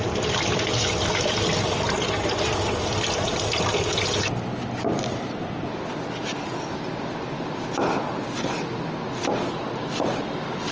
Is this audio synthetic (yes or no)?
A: no